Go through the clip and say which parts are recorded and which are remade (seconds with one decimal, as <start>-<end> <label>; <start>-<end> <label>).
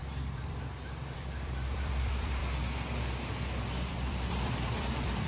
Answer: 0.0-2.4 remade; 2.4-3.9 recorded; 3.9-5.3 remade